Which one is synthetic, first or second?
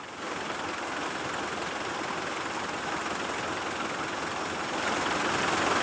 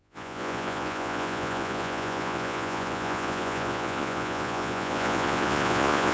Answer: second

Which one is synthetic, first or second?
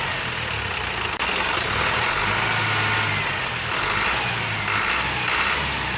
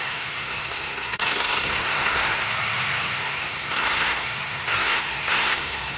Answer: second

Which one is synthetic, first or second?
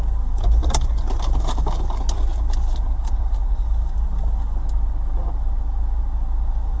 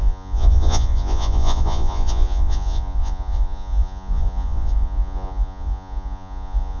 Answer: second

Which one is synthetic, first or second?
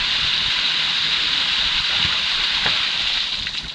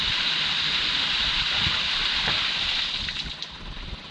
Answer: second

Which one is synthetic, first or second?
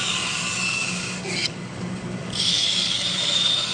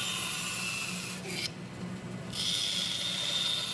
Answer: first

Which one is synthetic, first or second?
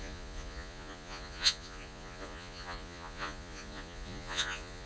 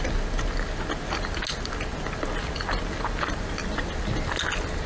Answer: first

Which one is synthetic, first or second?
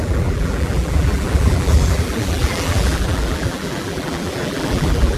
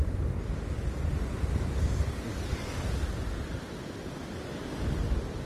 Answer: first